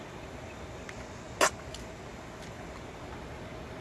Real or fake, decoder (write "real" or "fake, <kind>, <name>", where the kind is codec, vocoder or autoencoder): real